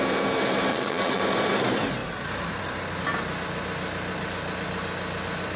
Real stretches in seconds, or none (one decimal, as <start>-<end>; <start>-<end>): 0.0-0.7; 1.2-5.6